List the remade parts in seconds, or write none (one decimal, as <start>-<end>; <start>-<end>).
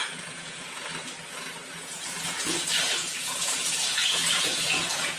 0.0-0.9; 1.8-5.2